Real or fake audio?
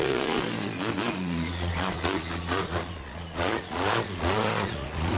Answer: fake